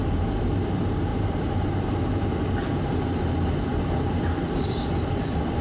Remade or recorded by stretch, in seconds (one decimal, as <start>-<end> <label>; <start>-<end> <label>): 0.0-1.1 recorded; 1.1-2.0 remade; 2.0-3.7 recorded; 3.7-5.6 remade